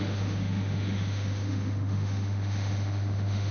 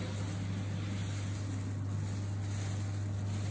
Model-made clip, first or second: first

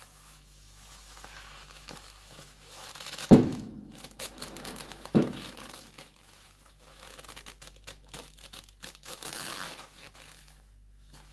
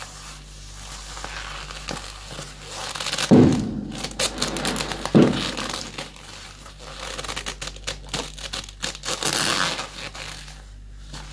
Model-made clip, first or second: first